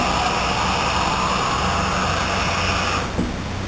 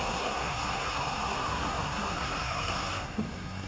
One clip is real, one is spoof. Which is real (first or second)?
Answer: first